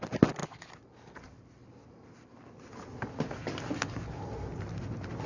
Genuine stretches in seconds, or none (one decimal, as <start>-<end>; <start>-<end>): 4.5-5.3